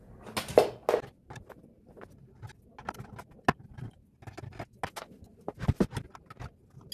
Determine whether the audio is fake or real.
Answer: real